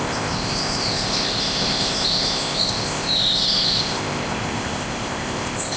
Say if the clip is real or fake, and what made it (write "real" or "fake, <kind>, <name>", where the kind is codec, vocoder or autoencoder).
fake, codec, ZipCodec